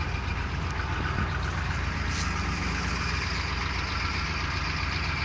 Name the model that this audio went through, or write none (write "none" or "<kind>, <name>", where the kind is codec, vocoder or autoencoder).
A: none